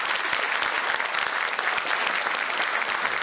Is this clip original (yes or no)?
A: yes